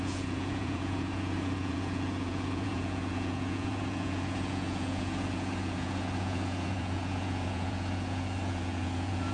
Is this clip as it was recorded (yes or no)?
no